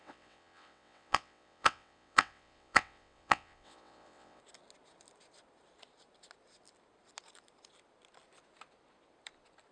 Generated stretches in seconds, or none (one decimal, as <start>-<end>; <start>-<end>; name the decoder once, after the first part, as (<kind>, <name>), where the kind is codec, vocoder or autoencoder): 0.0-4.4 (vocoder, WaveNeXt)